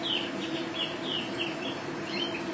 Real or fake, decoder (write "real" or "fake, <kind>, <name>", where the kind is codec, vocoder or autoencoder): fake, vocoder, BigVGAN v2